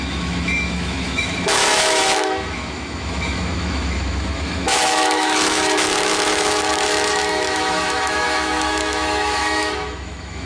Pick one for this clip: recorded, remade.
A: remade